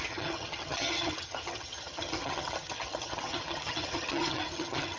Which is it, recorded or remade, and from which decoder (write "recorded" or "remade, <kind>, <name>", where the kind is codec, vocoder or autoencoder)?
remade, vocoder, HiFi-GAN